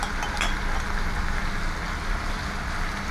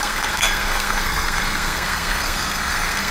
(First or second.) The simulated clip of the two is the second